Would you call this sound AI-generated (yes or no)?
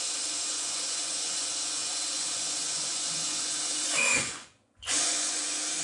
yes